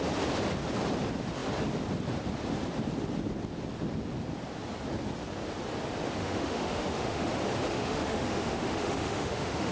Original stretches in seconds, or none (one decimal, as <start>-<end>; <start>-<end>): 0.0-6.2; 7.3-7.7